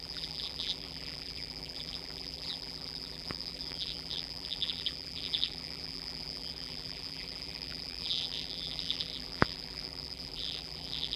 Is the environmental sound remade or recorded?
remade